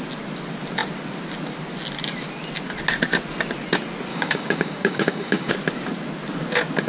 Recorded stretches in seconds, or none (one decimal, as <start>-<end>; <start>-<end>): 0.0-4.1; 5.5-6.9